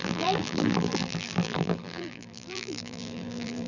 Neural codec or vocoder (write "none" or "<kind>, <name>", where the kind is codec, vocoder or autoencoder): vocoder, BigVGAN v2